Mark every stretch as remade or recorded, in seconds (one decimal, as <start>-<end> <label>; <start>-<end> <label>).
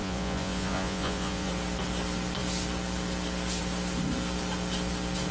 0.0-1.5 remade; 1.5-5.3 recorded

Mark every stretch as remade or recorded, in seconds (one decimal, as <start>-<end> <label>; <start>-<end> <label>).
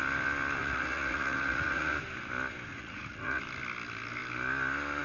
0.0-0.6 recorded; 0.6-1.9 remade; 1.9-2.7 recorded; 2.7-3.4 remade; 3.4-5.0 recorded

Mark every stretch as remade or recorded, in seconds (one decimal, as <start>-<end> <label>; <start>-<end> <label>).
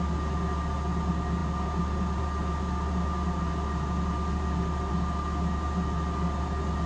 0.0-6.9 recorded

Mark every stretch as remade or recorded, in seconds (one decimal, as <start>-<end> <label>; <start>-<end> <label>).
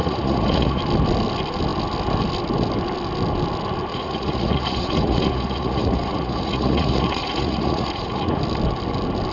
0.0-0.8 remade; 0.8-3.9 recorded; 3.9-8.4 remade; 8.4-9.3 recorded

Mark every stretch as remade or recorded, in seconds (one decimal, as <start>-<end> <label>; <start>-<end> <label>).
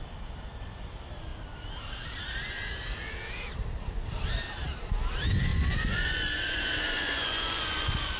0.0-5.5 recorded; 5.5-8.2 remade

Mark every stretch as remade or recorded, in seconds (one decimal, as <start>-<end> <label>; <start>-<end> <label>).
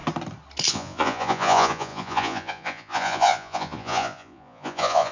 0.0-0.7 recorded; 0.7-5.1 remade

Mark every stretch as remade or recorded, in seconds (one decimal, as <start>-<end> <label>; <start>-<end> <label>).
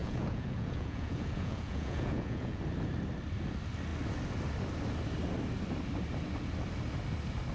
0.0-2.6 remade; 2.6-7.5 recorded